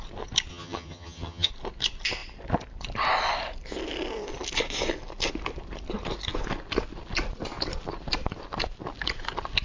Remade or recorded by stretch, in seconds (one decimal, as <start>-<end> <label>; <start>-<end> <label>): 0.0-0.5 recorded; 0.5-1.5 remade; 1.5-9.6 recorded